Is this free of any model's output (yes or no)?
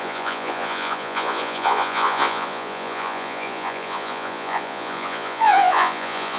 no